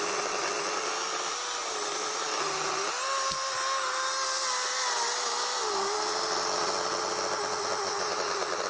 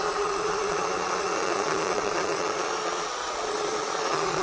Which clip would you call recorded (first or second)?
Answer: first